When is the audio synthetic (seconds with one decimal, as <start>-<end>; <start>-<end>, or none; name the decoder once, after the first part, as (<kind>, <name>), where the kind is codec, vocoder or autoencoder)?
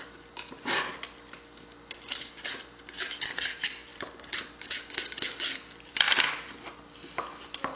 none